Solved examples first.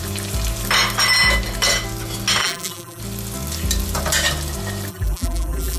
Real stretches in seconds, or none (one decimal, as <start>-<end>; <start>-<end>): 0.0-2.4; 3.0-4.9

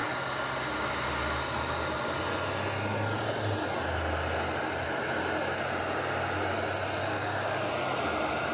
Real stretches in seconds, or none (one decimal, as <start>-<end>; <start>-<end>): 0.0-7.0; 7.7-8.5

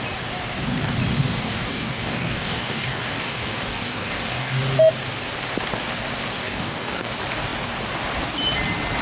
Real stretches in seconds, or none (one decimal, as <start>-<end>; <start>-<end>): 0.0-1.1; 4.6-6.4; 7.1-9.0

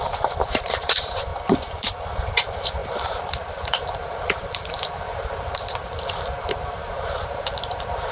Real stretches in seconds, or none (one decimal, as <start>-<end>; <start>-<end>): 1.3-2.2

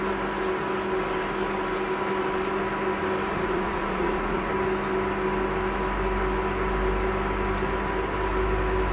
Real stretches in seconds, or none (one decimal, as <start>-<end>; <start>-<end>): 0.0-3.3; 4.5-8.9

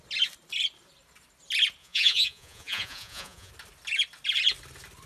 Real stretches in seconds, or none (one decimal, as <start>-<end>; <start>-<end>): 0.0-1.8; 3.5-5.1

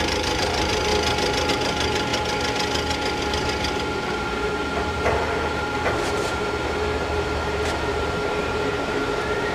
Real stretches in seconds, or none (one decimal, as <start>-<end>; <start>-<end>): 0.9-1.5; 2.1-3.2

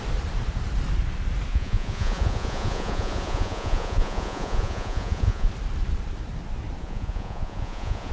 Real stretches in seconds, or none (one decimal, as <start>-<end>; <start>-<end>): 0.0-1.5; 5.5-6.8